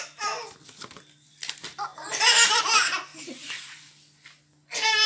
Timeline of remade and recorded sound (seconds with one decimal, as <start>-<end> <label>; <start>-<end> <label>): 0.0-1.9 recorded; 1.9-2.6 remade; 2.6-3.1 recorded; 3.1-3.7 remade; 3.7-5.1 recorded